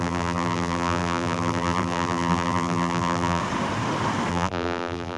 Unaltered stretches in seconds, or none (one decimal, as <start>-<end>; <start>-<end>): 3.4-4.3